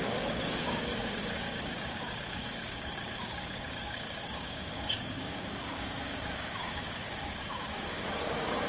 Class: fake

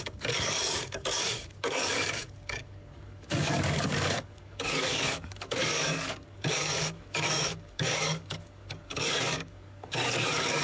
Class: fake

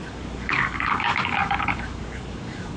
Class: fake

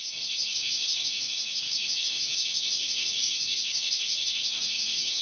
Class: fake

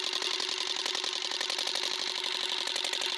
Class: real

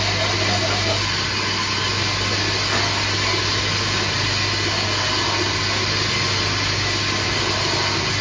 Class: real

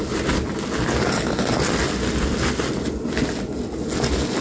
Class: real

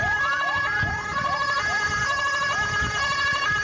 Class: real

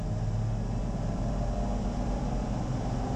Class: real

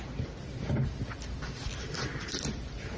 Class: real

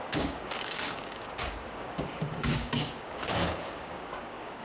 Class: fake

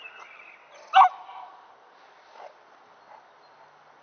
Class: real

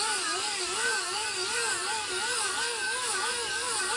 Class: fake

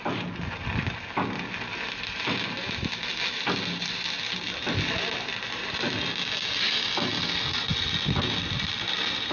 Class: real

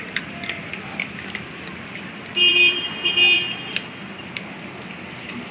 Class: real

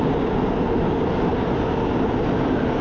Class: real